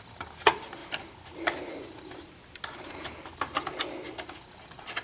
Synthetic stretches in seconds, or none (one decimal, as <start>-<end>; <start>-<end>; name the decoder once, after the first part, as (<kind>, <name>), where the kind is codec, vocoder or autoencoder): none